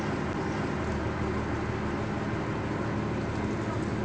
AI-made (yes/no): no